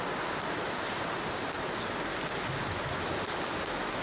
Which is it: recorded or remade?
recorded